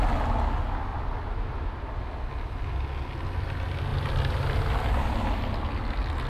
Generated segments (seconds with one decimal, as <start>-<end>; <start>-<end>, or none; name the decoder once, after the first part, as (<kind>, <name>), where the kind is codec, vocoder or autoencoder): 0.9-1.9 (vocoder, BigVGAN v2); 3.9-4.4